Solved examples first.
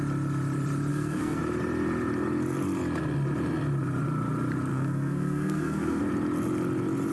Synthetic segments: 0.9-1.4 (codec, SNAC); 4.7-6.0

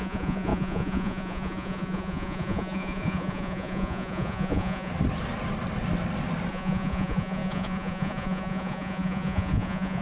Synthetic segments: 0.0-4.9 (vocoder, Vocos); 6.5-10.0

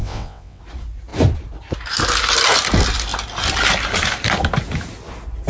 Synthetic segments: 0.0-0.6 (vocoder, WaveNeXt)

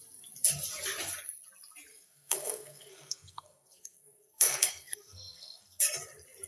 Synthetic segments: 1.9-5.8 (codec, SNAC)